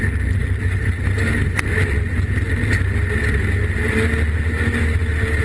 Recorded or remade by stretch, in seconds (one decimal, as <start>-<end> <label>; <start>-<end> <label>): 0.0-5.4 recorded